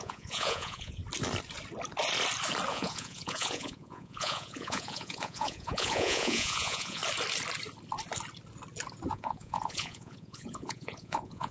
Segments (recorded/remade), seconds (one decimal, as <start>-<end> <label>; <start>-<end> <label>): 0.0-1.0 remade; 1.0-2.7 recorded; 2.7-7.0 remade; 7.0-9.1 recorded; 9.1-11.5 remade